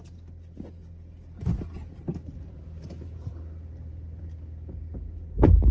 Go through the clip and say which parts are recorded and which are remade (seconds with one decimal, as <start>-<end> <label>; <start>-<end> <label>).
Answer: 0.0-5.7 recorded